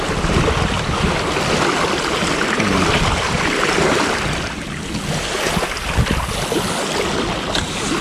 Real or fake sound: real